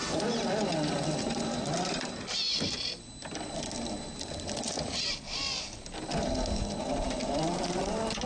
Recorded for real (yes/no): yes